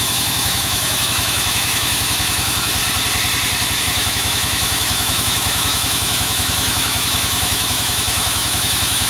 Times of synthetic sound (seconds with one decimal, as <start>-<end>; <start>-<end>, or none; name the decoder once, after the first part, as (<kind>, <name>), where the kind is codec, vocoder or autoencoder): 0.0-2.8 (autoencoder, DAC-VAE); 3.8-9.1